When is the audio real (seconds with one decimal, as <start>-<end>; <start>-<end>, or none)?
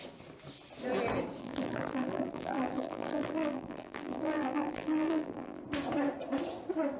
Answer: 0.0-1.4; 5.6-7.0